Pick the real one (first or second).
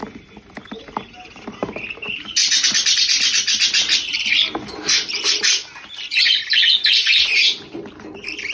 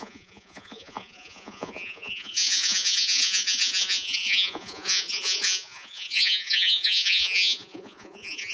first